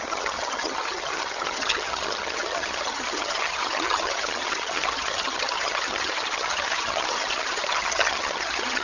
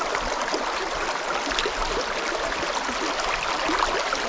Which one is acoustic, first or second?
second